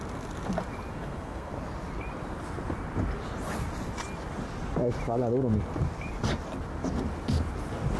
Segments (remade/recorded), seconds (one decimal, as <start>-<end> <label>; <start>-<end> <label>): 0.0-0.9 recorded; 0.9-1.5 remade; 1.5-8.0 recorded